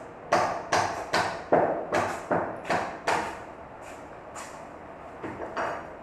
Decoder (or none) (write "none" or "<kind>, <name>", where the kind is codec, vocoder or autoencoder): none